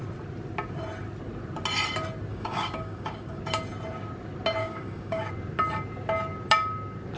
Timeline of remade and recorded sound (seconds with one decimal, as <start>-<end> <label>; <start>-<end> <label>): 0.0-2.3 recorded; 2.3-3.4 remade; 3.4-4.6 recorded; 4.6-5.3 remade; 5.3-7.2 recorded